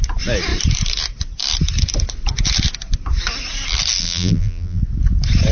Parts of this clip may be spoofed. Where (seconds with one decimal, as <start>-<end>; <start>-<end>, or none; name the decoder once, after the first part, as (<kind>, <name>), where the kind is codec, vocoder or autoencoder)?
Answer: 4.0-4.8 (vocoder, BigVGAN v2)